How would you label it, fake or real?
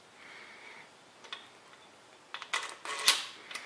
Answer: real